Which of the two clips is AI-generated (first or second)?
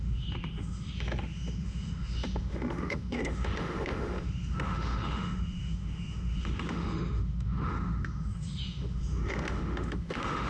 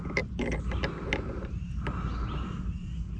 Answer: first